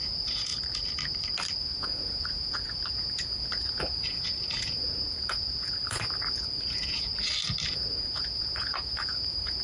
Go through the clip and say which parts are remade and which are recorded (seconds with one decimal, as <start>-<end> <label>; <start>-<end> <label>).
0.0-0.5 remade; 0.5-1.6 recorded; 1.6-7.1 remade; 7.1-7.7 recorded; 7.7-9.6 remade